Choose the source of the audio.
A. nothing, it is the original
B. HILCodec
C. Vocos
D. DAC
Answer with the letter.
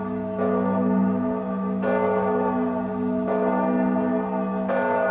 A